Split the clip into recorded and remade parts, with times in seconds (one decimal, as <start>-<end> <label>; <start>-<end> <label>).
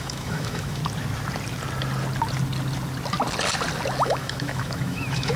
0.0-0.8 remade; 0.8-4.0 recorded; 4.0-5.4 remade